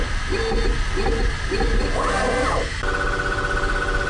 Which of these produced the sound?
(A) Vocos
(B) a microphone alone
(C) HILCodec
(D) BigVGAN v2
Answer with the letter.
B